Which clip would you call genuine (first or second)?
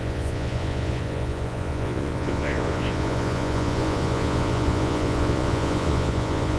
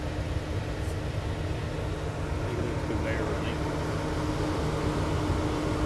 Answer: second